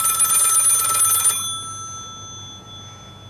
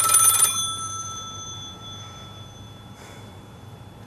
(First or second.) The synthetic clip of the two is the second